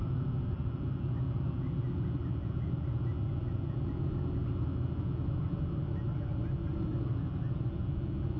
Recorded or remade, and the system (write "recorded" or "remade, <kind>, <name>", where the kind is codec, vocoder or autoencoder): recorded